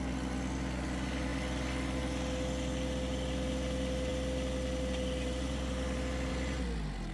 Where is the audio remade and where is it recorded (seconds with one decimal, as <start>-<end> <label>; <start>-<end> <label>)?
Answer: 0.0-7.1 recorded